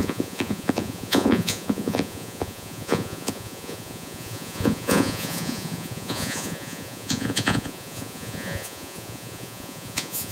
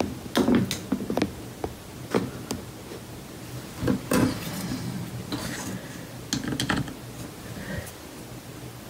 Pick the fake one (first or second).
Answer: first